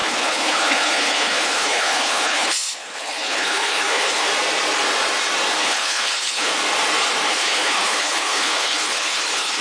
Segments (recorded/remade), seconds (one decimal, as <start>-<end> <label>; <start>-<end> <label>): 0.0-4.3 remade; 4.3-5.6 recorded; 5.6-6.5 remade; 6.5-7.3 recorded; 7.3-9.6 remade

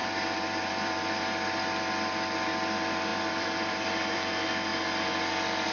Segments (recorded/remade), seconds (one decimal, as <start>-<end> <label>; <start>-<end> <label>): 0.0-1.2 remade; 1.2-3.1 recorded; 3.1-4.3 remade; 4.3-5.7 recorded

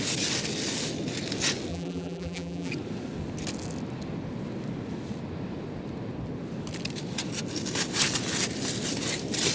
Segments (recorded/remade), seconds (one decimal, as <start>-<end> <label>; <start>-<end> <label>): 0.0-1.7 recorded; 1.7-2.7 remade; 2.7-9.5 recorded

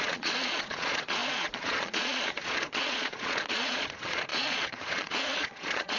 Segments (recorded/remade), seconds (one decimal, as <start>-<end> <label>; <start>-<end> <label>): 0.0-6.0 remade

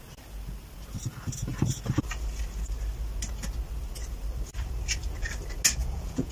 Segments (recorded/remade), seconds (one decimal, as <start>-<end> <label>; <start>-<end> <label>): 0.0-5.8 recorded; 5.8-6.3 remade

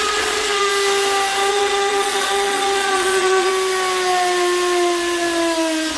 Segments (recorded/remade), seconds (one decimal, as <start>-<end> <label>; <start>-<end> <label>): 0.0-0.7 remade; 0.7-1.5 recorded; 1.5-3.5 remade; 3.5-6.0 recorded